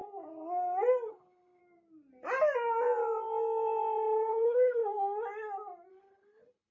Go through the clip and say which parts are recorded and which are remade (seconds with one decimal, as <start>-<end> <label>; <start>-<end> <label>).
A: 0.0-1.1 recorded; 1.1-1.6 remade; 1.6-4.3 recorded; 4.3-4.8 remade; 4.8-5.9 recorded; 5.9-6.7 remade